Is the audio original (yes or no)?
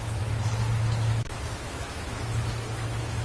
no